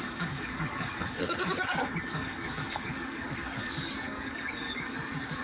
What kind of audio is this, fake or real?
fake